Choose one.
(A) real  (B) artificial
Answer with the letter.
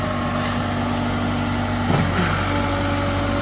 A